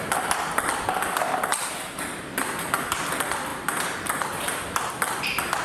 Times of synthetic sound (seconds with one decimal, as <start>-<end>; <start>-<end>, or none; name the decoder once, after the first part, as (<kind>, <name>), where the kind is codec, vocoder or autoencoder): 1.5-3.1 (vocoder, BigVGAN v2); 3.5-4.9